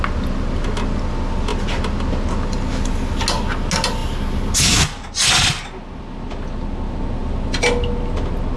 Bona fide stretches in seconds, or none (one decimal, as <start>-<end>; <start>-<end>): 0.0-8.6